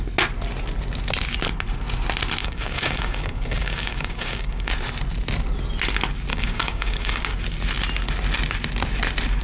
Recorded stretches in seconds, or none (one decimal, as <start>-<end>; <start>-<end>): 0.0-2.4; 4.7-6.3; 7.2-9.4